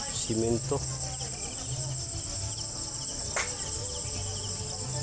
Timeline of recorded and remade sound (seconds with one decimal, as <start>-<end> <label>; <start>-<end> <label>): 0.0-5.0 recorded